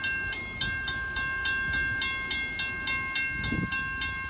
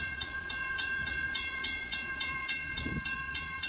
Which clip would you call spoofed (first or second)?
second